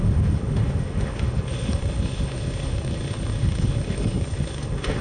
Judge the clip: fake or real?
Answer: fake